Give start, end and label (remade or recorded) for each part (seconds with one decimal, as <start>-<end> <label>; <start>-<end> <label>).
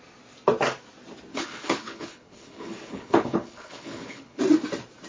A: 0.0-1.3 recorded; 1.3-4.4 remade; 4.4-5.1 recorded